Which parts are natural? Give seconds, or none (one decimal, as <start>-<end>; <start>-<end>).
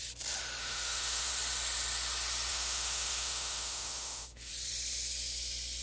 0.0-0.6; 1.3-2.5; 4.5-5.8